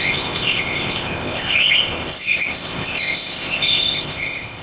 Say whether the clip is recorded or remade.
remade